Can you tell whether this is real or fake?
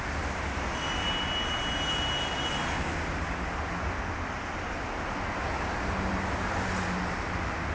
real